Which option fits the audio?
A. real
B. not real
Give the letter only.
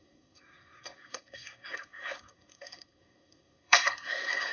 B